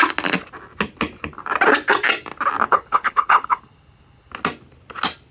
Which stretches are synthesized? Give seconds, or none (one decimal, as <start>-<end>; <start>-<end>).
2.7-4.3